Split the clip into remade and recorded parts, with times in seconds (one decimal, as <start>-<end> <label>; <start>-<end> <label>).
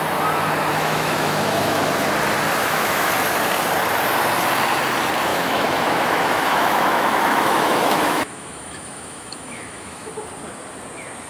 0.0-0.7 recorded; 0.7-1.8 remade; 1.8-2.6 recorded; 2.6-3.1 remade; 3.1-5.3 recorded; 5.3-10.1 remade; 10.1-11.3 recorded